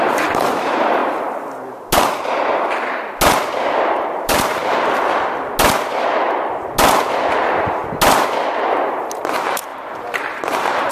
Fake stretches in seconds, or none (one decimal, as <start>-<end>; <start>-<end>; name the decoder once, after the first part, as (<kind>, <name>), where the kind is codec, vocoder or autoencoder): 0.0-1.0 (vocoder, BigVGAN v2); 3.8-4.6; 7.3-7.8; 8.9-10.9